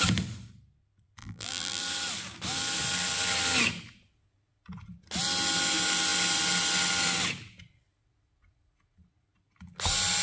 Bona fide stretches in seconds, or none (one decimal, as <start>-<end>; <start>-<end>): 0.0-1.2; 1.8-10.2